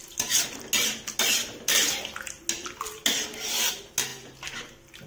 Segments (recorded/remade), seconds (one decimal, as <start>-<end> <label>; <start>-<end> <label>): 0.0-5.1 recorded

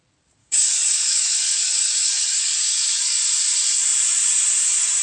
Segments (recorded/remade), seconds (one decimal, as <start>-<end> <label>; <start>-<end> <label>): 0.0-0.4 recorded; 0.4-3.2 remade; 3.2-5.0 recorded

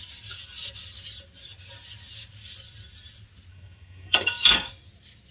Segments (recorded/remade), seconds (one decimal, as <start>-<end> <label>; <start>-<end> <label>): 0.0-3.5 recorded; 3.5-4.7 remade; 4.7-5.3 recorded